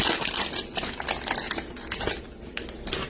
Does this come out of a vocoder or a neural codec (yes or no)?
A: no